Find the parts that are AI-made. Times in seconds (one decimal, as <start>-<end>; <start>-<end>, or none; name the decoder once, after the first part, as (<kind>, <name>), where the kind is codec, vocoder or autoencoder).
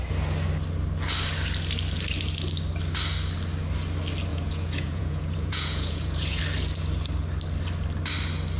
4.3-6.4 (vocoder, Vocos)